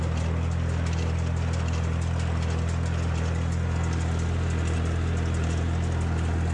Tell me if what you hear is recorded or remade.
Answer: recorded